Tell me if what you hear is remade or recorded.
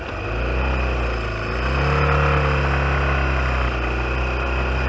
recorded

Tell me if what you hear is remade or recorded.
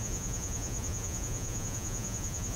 remade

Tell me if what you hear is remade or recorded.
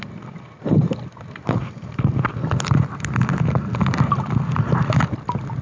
recorded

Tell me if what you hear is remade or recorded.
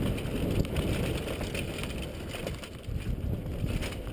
recorded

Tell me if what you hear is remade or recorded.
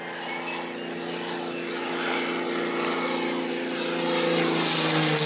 recorded